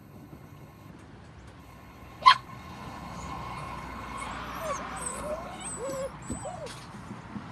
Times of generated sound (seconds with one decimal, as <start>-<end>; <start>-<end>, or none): 0.0-0.9; 1.6-4.3; 5.1-5.6